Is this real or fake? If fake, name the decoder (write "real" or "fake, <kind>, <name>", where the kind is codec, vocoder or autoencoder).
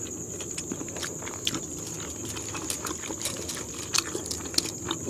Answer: real